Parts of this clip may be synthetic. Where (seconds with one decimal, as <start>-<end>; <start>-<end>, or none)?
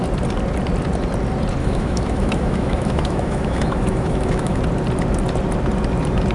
1.6-4.6